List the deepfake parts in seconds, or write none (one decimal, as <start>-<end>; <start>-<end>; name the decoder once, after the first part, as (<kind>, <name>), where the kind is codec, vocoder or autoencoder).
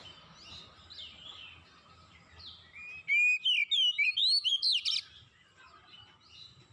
none